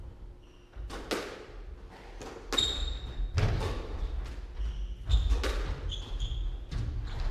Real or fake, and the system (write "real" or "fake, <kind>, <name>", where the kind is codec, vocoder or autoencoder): real